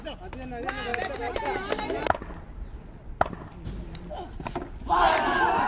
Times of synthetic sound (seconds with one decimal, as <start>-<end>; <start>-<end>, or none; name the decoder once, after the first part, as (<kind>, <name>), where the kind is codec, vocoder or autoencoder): none